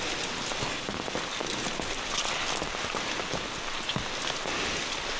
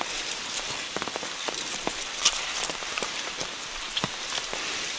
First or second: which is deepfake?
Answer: second